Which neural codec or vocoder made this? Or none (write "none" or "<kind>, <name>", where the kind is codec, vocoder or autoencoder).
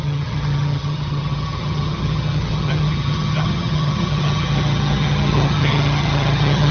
vocoder, HiFi-GAN